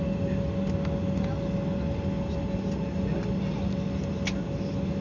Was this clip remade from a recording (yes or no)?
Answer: no